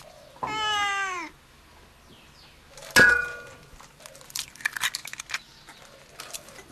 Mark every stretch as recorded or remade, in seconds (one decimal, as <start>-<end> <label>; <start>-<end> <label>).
0.0-6.7 recorded